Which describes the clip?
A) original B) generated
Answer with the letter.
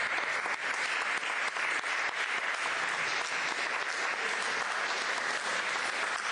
A